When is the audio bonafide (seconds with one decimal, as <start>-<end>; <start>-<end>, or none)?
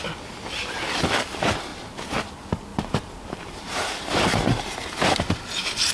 0.0-2.7; 5.2-5.9